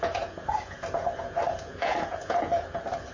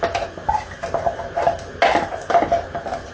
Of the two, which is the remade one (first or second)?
first